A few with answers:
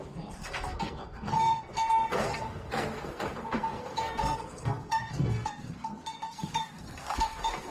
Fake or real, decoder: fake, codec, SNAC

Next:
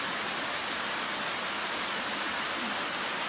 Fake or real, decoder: real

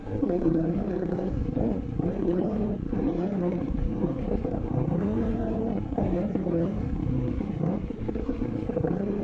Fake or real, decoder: fake, codec, SNAC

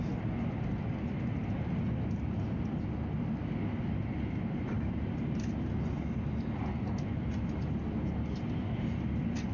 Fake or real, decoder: real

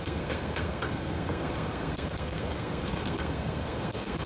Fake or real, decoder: fake, codec, SNAC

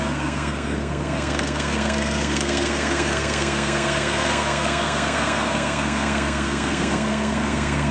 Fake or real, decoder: fake, codec, SNAC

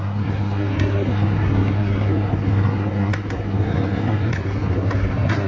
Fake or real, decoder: fake, codec, SNAC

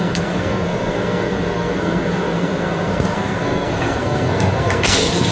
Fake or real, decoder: fake, codec, SNAC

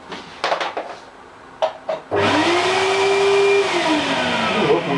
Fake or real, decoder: real